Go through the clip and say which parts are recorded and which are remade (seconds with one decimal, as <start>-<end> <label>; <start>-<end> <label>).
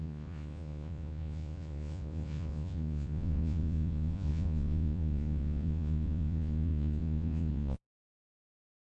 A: 0.0-9.0 remade